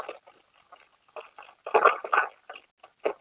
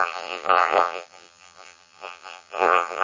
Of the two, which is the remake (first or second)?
second